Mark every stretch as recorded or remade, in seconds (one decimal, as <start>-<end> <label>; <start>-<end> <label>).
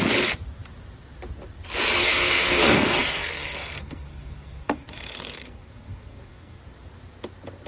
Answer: 0.0-2.0 recorded; 2.0-6.6 remade; 6.6-7.7 recorded